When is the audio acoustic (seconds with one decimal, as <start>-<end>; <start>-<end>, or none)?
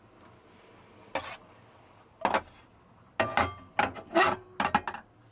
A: 0.0-5.3